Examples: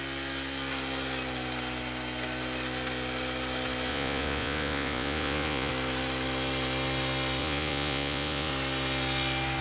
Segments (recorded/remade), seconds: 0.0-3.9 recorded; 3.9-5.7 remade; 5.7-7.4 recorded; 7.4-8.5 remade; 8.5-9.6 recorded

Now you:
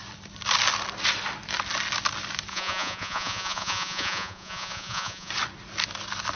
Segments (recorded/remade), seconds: 0.0-2.5 recorded; 2.5-5.3 remade; 5.3-6.4 recorded

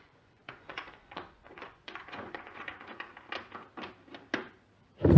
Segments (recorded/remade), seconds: 0.0-3.1 remade; 3.1-5.2 recorded

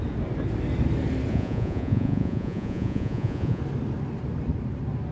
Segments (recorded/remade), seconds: 0.0-1.3 recorded; 1.3-3.6 remade; 3.6-5.1 recorded

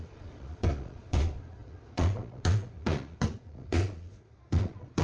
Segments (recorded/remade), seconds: 0.0-5.0 remade

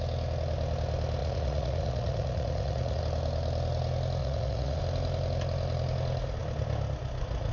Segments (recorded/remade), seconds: 0.0-1.2 recorded; 1.2-3.0 remade; 3.0-4.2 recorded; 4.2-4.8 remade; 4.8-7.5 recorded

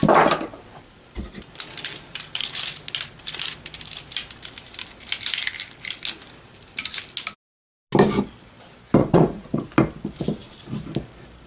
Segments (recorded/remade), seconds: 0.0-9.0 recorded; 9.0-9.7 remade; 9.7-11.5 recorded

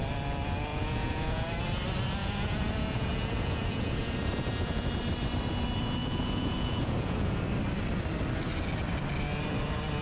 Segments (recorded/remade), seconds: 0.0-0.7 recorded; 0.7-1.5 remade; 1.5-2.2 recorded; 2.2-4.9 remade; 4.9-6.0 recorded; 6.0-7.4 remade; 7.4-10.0 recorded